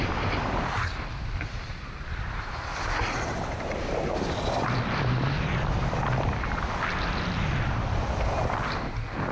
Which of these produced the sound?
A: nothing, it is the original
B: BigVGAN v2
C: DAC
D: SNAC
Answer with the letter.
A